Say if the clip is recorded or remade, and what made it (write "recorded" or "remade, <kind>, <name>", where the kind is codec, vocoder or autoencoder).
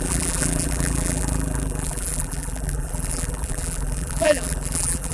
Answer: remade, vocoder, BigVGAN v2